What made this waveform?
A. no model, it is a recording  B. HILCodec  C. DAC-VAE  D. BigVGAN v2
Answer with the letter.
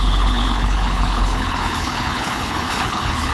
B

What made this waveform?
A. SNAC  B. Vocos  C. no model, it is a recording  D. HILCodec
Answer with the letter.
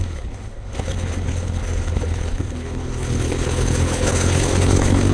D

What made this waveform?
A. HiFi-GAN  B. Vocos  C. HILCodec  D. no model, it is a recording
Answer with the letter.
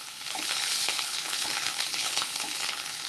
C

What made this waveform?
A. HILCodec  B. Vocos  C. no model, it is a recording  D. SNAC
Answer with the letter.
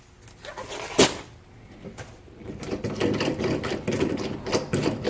C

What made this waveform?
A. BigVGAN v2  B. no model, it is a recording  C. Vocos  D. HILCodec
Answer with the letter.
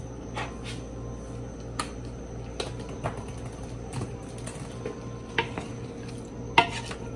B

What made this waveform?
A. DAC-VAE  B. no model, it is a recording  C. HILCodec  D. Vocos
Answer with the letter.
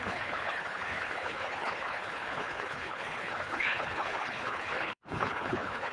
C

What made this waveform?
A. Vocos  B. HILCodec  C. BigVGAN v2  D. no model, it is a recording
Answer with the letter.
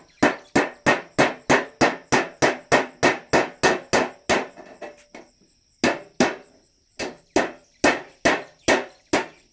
D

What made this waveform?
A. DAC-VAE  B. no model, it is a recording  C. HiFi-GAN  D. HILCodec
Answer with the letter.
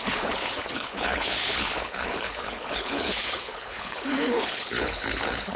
D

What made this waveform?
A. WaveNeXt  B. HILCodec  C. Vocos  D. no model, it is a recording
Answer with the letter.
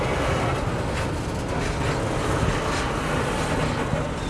D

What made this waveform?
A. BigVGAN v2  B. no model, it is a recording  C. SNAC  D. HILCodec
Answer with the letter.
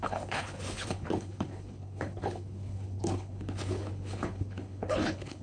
D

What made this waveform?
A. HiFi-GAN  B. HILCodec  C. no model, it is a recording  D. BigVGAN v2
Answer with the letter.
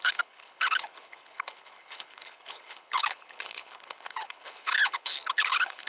B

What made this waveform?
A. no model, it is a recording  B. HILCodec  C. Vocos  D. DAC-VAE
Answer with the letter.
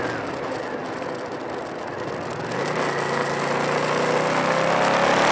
A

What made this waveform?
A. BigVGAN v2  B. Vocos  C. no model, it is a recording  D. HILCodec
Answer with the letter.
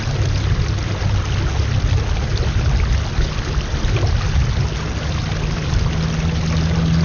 C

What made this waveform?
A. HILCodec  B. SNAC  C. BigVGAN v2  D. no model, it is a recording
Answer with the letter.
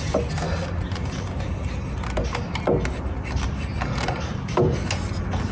D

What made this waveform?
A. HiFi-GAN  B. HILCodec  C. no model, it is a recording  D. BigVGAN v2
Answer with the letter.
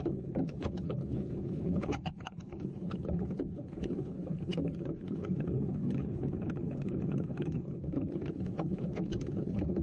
B